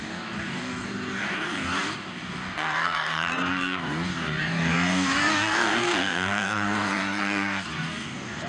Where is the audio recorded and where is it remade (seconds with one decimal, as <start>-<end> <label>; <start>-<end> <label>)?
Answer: 0.0-8.5 remade